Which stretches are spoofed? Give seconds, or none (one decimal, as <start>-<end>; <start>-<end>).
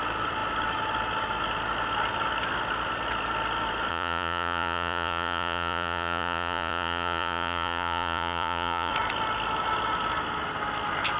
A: 3.9-8.9